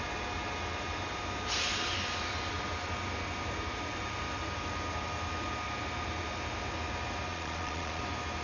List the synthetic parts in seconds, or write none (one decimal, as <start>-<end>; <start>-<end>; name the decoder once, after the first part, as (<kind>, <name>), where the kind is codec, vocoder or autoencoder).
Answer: 7.3-8.0 (vocoder, Vocos)